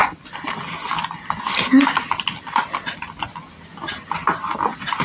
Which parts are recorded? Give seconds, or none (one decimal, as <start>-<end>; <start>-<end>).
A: 0.0-5.0